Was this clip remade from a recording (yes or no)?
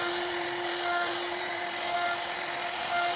no